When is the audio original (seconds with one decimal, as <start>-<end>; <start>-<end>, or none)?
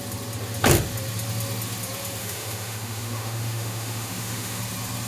0.0-2.2; 4.6-5.1